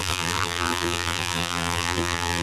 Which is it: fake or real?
fake